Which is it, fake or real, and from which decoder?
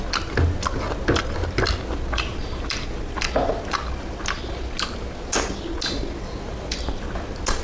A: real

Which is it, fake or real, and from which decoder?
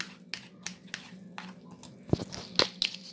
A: real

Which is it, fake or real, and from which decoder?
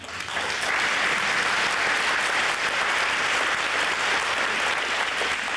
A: real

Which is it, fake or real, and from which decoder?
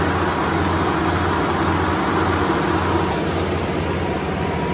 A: real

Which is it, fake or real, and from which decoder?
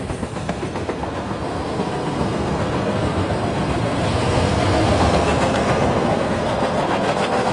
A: fake, codec, SNAC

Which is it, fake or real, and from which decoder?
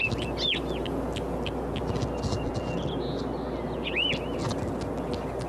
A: real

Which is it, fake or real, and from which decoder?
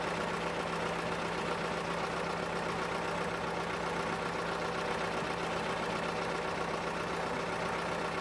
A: real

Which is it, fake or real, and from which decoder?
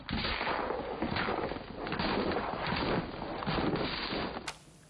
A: real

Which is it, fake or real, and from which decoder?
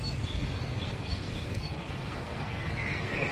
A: fake, codec, SNAC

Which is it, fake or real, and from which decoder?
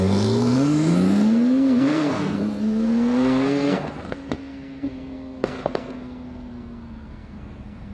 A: fake, codec, SNAC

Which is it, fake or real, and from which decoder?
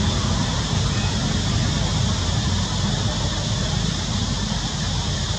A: real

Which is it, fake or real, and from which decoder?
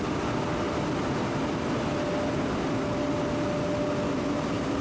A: real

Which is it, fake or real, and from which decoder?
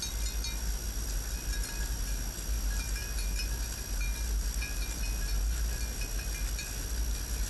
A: real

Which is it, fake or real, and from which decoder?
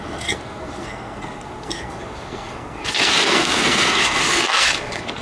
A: fake, codec, SNAC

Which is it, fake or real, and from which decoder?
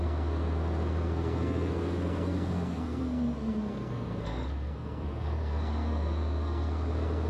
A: fake, codec, SNAC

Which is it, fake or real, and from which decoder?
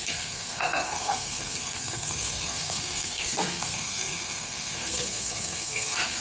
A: fake, codec, SNAC